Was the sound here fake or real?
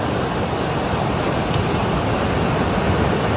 real